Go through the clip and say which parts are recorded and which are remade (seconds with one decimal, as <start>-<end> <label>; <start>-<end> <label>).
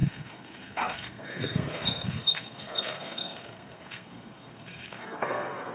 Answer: 0.0-5.7 remade